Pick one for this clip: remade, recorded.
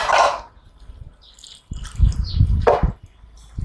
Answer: recorded